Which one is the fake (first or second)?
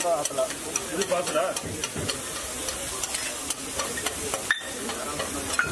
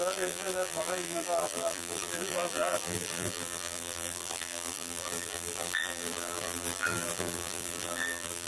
second